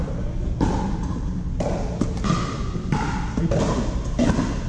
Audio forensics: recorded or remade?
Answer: recorded